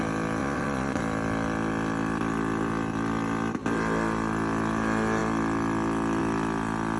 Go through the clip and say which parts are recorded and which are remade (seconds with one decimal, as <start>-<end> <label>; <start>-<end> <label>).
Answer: 0.0-0.4 recorded; 0.4-1.0 remade; 1.0-7.0 recorded